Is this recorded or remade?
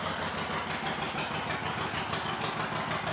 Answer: recorded